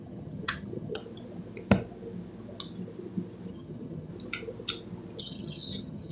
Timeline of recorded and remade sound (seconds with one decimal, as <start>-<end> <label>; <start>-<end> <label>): 0.0-1.0 remade; 1.0-3.5 recorded; 3.5-4.1 remade; 4.1-5.2 recorded; 5.2-6.1 remade